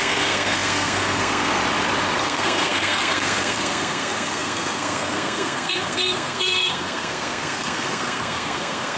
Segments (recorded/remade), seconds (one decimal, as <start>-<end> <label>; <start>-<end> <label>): 0.0-1.6 remade; 1.6-2.2 recorded; 2.2-9.0 remade